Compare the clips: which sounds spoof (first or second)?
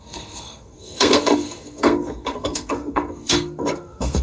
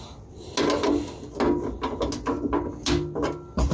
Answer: first